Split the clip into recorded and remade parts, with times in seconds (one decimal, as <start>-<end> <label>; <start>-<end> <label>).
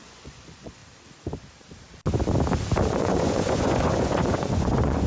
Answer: 0.0-0.8 remade; 0.8-2.9 recorded; 2.9-5.1 remade